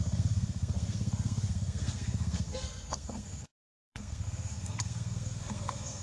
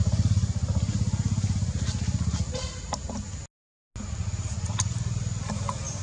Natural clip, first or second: second